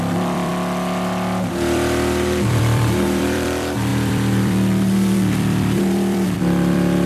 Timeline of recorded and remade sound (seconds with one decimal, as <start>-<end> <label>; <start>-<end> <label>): 0.0-0.5 remade; 0.5-1.5 recorded; 1.5-7.1 remade